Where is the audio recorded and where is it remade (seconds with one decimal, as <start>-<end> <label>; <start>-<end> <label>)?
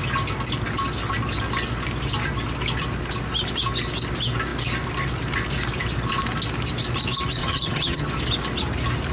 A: 0.0-7.4 recorded; 7.4-8.1 remade; 8.1-9.1 recorded